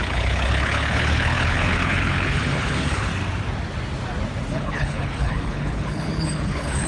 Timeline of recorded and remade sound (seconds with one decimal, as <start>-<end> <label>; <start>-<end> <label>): 0.0-3.1 remade; 3.1-4.5 recorded; 4.5-6.9 remade